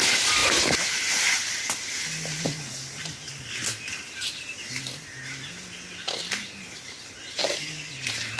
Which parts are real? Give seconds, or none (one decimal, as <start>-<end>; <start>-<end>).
0.0-7.4; 7.9-8.4